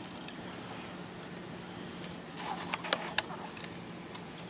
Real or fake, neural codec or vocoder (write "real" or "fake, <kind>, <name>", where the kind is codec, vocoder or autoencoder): real